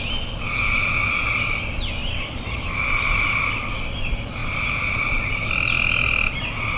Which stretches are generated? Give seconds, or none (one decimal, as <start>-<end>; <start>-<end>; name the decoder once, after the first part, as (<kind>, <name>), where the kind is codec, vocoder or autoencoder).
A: 2.0-3.5 (vocoder, BigVGAN v2); 4.4-5.5